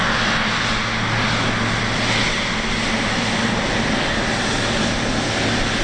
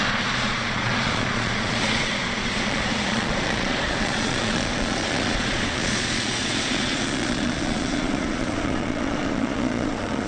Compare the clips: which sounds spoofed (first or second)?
second